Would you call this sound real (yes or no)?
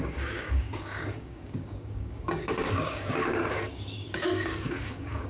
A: no